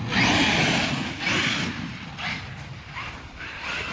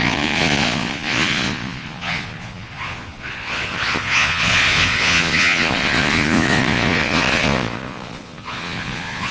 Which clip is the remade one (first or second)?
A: second